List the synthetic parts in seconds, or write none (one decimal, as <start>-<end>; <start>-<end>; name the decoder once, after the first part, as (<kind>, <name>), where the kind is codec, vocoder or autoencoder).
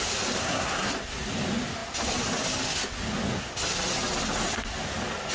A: 0.4-0.9 (codec, SNAC)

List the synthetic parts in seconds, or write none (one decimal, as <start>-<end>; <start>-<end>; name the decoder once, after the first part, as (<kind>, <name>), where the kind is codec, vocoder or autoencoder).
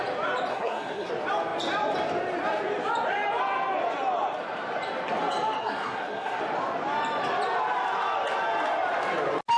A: 0.5-1.1 (codec, SNAC); 5.6-6.4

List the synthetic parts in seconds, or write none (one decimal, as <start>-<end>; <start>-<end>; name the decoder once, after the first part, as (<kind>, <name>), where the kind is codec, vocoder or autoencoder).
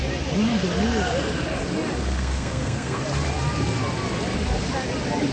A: 2.0-3.0 (codec, SNAC)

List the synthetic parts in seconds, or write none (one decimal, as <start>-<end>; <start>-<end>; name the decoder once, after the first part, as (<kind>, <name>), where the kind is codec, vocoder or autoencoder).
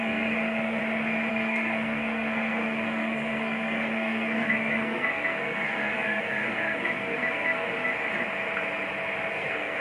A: 0.0-0.8 (codec, SNAC); 1.3-7.7; 9.3-9.8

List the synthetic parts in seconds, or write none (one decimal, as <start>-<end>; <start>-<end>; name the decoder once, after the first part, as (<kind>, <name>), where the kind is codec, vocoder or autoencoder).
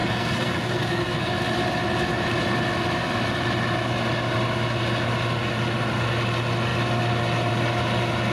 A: 0.0-1.3 (codec, SNAC)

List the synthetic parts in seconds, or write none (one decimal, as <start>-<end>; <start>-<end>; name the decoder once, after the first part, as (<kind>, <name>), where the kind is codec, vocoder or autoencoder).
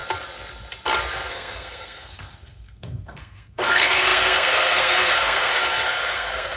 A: 1.3-6.6 (codec, SNAC)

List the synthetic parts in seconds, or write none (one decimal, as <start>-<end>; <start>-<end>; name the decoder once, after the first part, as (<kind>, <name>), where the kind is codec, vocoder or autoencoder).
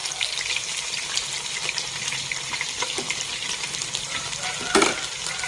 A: none